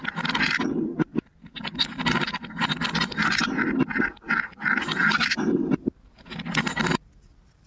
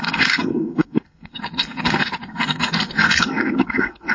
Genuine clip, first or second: first